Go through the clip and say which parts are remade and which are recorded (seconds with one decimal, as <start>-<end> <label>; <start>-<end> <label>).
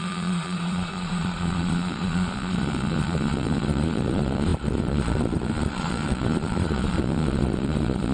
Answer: 0.0-8.1 remade